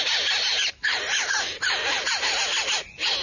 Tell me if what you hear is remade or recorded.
recorded